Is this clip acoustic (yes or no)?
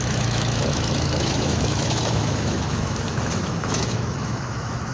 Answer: no